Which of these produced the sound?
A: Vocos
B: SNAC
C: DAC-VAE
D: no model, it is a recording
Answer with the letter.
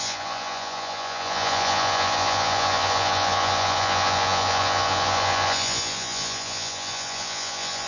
A